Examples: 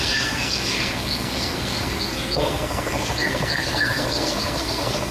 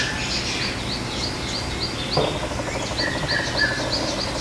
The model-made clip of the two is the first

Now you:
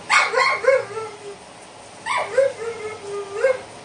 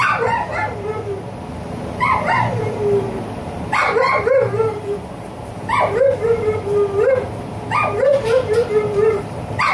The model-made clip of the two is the second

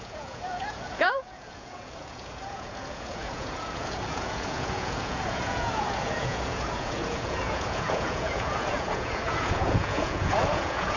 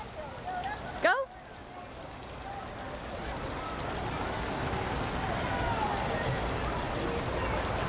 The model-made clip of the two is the first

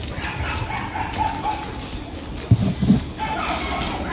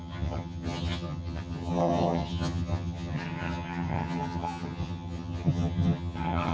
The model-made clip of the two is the second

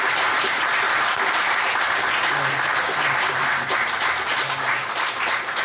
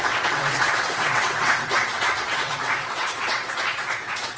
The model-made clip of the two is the second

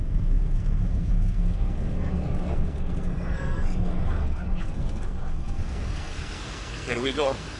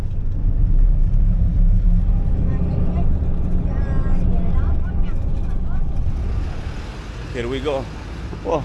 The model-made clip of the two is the first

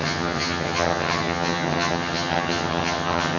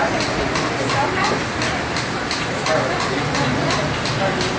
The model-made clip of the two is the first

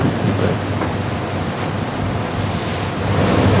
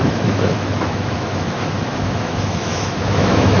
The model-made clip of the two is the second